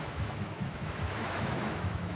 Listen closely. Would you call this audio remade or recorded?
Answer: remade